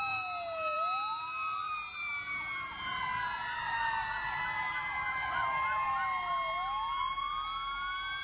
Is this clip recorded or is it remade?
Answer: recorded